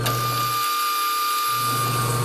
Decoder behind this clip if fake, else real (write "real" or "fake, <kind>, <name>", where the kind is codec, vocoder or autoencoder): real